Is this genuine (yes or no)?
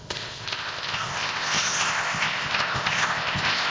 no